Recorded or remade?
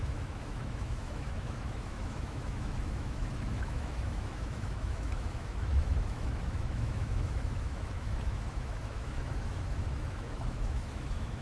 remade